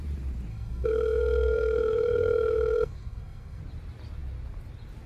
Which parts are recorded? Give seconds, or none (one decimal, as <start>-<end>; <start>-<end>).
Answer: 0.0-0.5; 3.6-5.1